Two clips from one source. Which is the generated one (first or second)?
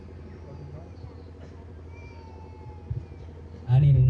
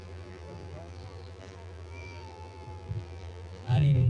second